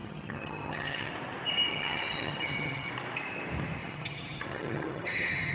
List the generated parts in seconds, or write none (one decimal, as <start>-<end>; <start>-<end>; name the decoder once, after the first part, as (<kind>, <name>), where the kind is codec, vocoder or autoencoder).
0.0-1.1 (vocoder, HiFi-GAN); 1.7-2.9; 3.8-5.5